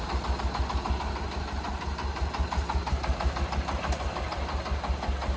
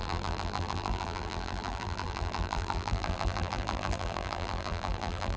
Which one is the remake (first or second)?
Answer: second